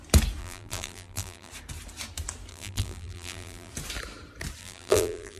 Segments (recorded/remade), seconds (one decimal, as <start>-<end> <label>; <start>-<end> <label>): 0.0-0.4 recorded; 0.4-1.5 remade; 1.5-2.5 recorded; 2.5-3.7 remade; 3.7-4.6 recorded; 4.6-5.4 remade